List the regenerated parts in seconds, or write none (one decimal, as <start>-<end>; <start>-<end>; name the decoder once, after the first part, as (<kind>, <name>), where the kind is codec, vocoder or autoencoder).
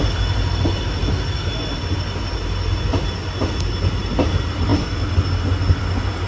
none